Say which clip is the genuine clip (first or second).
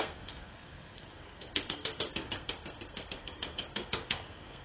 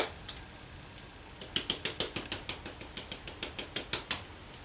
second